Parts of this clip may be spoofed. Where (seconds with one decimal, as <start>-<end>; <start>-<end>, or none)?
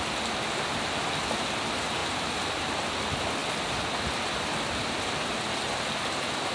none